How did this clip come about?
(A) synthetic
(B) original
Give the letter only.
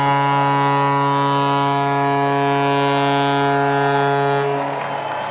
B